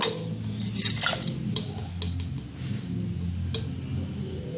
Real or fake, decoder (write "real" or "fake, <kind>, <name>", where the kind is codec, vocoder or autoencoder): real